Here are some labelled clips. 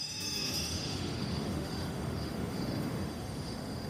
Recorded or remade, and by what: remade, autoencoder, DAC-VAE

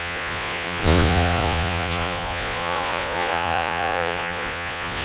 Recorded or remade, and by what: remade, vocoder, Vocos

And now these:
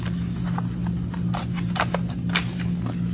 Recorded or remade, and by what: recorded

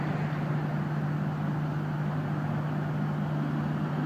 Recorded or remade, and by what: recorded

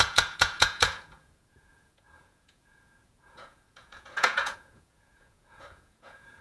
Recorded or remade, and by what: remade, vocoder, Vocos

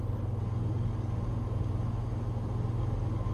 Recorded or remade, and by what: recorded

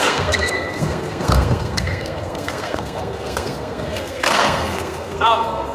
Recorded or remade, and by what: remade, codec, SNAC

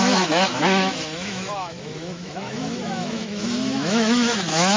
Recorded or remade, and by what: remade, autoencoder, DAC-VAE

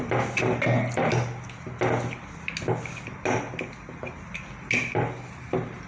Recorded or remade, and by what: recorded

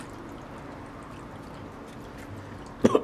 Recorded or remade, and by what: recorded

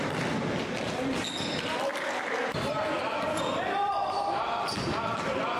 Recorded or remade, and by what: remade, vocoder, BigVGAN v2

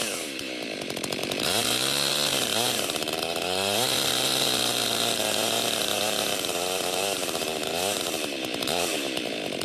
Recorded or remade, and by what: remade, vocoder, BigVGAN v2